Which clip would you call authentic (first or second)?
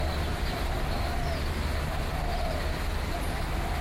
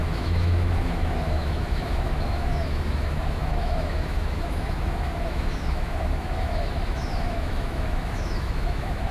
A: first